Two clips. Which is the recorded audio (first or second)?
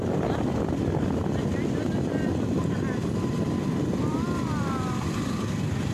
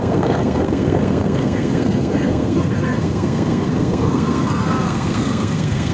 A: first